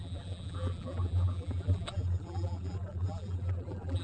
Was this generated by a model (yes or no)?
yes